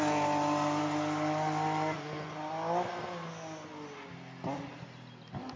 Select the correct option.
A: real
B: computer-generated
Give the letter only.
A